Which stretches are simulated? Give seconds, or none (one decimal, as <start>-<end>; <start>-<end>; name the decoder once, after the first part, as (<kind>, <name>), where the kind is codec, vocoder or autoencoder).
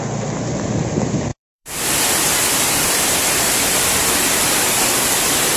1.3-4.7 (vocoder, BigVGAN v2)